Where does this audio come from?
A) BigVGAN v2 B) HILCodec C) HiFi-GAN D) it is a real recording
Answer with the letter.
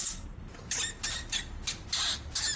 D